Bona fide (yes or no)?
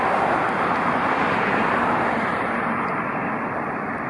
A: yes